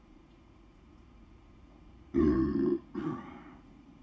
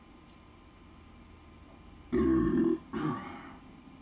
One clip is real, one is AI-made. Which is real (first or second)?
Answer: second